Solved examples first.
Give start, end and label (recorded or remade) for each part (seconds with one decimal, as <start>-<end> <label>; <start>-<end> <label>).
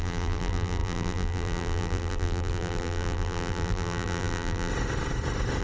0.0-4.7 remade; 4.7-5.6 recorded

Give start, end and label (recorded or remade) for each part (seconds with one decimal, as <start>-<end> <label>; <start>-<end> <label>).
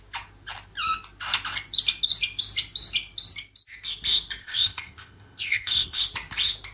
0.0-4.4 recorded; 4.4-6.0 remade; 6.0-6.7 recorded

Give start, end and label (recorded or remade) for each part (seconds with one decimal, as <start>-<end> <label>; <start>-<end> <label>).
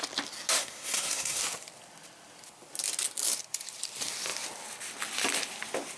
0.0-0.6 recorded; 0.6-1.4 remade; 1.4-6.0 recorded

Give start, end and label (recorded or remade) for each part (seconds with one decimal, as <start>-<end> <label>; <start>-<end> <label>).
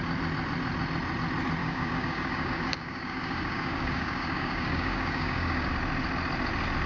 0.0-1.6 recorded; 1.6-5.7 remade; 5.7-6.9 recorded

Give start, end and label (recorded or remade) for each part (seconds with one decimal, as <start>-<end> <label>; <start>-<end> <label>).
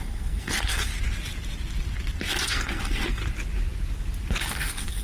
0.0-0.9 remade; 0.9-2.3 recorded; 2.3-3.2 remade; 3.2-4.4 recorded; 4.4-5.0 remade